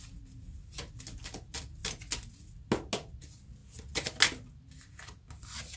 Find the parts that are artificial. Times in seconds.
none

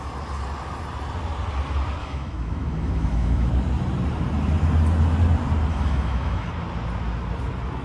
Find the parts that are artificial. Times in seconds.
2.0-3.5; 5.7-6.5

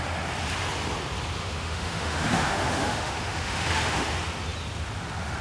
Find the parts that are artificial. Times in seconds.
1.4-4.1

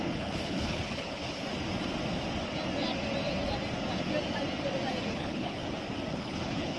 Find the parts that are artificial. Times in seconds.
0.0-1.4; 5.1-5.6; 6.1-6.8

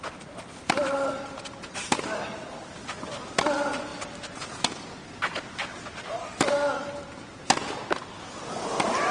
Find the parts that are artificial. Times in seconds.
none

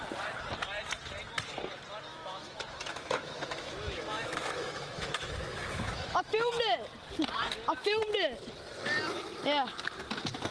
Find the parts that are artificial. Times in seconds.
2.1-6.5

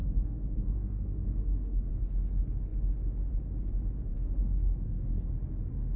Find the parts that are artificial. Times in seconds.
0.0-1.9; 4.1-5.3

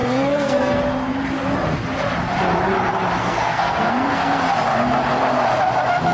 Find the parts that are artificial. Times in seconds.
0.0-0.8; 3.2-4.4